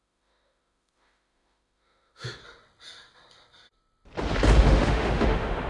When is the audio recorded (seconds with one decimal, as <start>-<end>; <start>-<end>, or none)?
2.4-4.6